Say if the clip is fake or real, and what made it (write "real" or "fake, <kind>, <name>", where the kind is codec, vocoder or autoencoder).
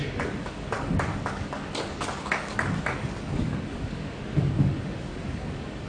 fake, codec, DAC